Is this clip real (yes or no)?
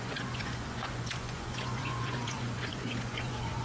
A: no